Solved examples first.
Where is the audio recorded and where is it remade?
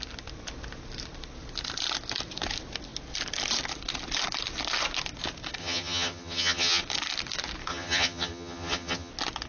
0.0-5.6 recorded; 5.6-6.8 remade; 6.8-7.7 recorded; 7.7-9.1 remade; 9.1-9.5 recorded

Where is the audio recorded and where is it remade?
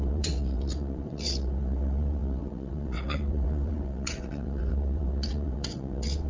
0.0-6.3 remade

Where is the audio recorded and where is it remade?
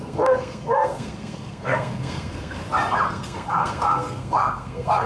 0.0-2.6 remade; 2.6-3.1 recorded; 3.1-5.1 remade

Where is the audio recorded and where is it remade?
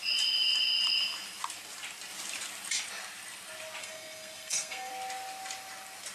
0.0-3.8 recorded; 3.8-4.9 remade; 4.9-6.1 recorded